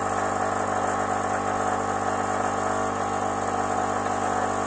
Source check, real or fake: real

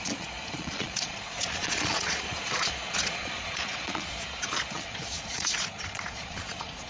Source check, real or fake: fake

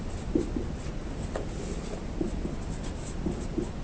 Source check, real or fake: real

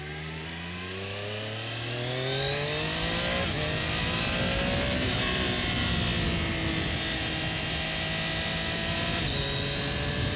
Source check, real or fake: real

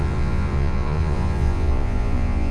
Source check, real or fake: fake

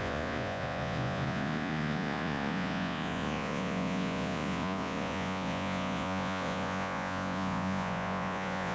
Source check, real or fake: fake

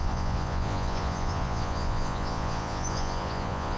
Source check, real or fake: fake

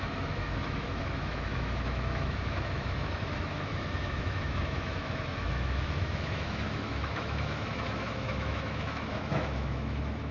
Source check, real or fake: fake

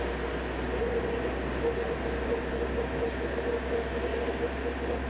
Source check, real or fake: real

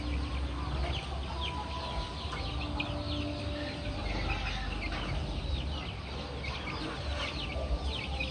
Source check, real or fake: real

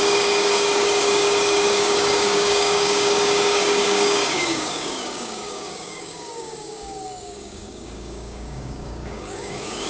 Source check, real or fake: fake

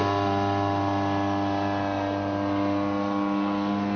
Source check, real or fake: real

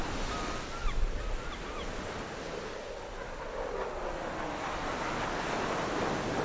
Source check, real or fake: real